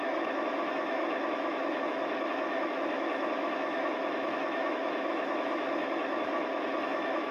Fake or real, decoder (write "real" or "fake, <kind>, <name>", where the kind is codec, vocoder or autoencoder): fake, autoencoder, DAC-VAE